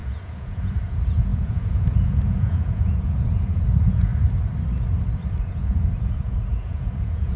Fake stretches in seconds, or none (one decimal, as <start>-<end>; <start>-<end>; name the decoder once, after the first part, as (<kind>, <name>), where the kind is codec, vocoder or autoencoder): 0.0-4.1 (vocoder, Vocos); 5.4-7.4